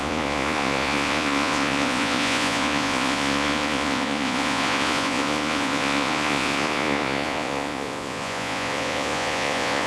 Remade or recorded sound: remade